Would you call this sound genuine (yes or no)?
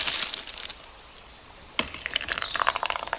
yes